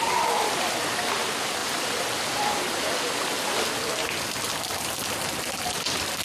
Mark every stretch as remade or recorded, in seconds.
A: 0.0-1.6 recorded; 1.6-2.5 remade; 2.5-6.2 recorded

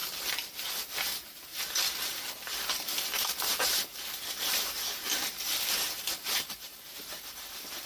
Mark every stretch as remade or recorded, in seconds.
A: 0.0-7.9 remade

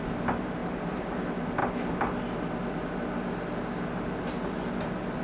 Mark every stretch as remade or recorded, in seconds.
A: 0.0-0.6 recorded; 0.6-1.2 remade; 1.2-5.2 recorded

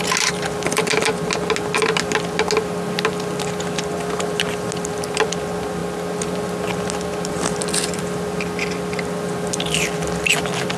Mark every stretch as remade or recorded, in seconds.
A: 0.0-10.8 recorded

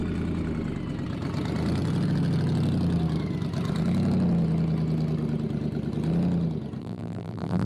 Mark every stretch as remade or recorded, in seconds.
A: 0.0-6.8 recorded; 6.8-7.7 remade

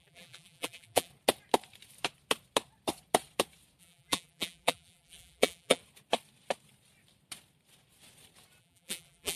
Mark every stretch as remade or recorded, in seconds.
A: 0.0-1.1 remade; 1.1-3.8 recorded; 3.8-5.8 remade; 5.8-8.6 recorded; 8.6-9.4 remade

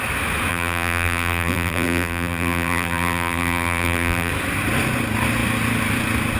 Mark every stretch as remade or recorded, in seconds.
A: 0.0-0.5 recorded; 0.5-4.3 remade; 4.3-6.4 recorded